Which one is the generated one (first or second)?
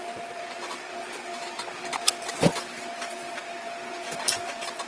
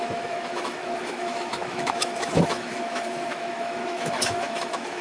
second